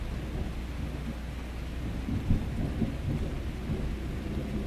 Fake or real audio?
real